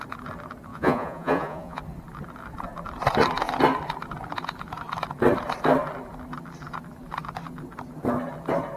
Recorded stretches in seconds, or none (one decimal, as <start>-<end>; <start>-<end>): 0.0-0.7; 1.8-8.8